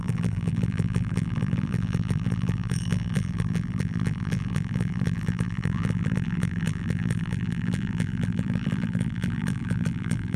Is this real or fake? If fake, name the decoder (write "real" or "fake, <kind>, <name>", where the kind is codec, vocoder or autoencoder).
fake, vocoder, BigVGAN v2